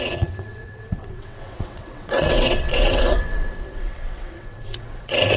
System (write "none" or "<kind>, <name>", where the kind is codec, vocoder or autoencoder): vocoder, WaveNeXt